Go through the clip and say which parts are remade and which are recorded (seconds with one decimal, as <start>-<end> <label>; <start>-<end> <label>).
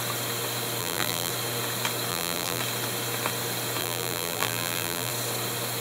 0.0-0.8 recorded; 0.8-1.3 remade; 1.3-2.1 recorded; 2.1-2.6 remade; 2.6-3.8 recorded; 3.8-5.1 remade; 5.1-5.8 recorded